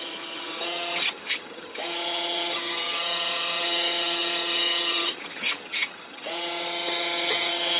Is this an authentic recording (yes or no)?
no